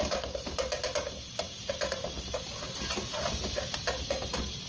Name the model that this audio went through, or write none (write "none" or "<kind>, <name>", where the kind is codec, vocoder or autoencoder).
none